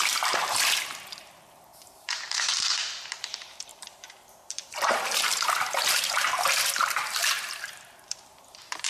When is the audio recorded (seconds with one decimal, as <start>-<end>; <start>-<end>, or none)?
none